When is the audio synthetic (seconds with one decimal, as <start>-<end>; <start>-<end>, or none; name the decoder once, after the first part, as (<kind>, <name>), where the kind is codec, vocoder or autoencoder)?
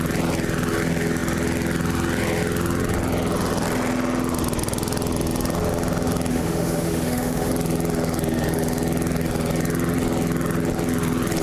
6.3-7.5 (autoencoder, DAC-VAE)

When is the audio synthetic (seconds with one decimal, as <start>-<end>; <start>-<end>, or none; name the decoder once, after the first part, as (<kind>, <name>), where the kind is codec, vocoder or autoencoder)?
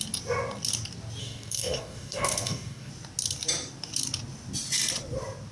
1.2-2.9 (codec, DAC)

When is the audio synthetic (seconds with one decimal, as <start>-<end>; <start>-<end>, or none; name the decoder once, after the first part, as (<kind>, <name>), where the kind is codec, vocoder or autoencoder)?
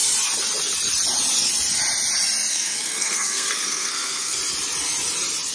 2.5-4.4 (codec, SNAC)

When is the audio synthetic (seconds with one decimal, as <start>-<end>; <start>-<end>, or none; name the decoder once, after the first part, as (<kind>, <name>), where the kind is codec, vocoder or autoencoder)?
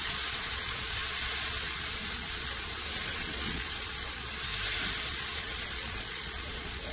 0.0-4.5 (vocoder, Vocos); 5.0-6.9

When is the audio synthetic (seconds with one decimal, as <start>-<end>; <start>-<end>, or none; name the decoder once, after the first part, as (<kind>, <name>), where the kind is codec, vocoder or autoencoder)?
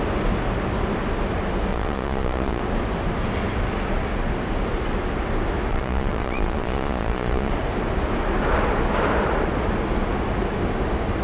1.7-2.6 (vocoder, Vocos); 5.7-7.5